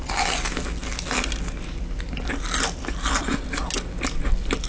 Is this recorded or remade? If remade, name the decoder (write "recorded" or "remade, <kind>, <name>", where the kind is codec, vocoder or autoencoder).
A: recorded